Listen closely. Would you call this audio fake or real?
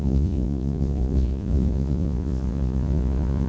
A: fake